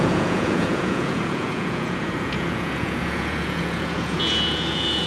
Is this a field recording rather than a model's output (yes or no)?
no